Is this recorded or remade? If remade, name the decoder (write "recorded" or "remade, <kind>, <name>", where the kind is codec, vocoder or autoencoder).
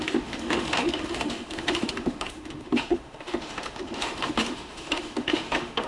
remade, autoencoder, DAC-VAE